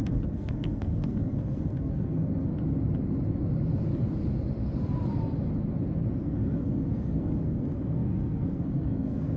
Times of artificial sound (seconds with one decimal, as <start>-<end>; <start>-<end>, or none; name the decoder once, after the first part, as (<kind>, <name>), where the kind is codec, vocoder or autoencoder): 0.0-2.5 (codec, SNAC); 6.2-9.4